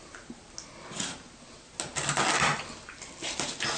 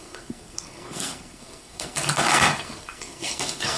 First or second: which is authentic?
first